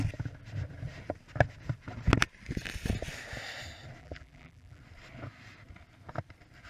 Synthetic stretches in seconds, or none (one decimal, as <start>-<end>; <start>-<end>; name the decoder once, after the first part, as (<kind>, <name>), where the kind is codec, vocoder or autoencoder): 4.0-4.8 (vocoder, BigVGAN v2)